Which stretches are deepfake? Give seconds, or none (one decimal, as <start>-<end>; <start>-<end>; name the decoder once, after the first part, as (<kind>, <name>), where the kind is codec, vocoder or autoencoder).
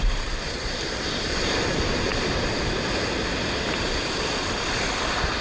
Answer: 0.0-2.1 (vocoder, BigVGAN v2)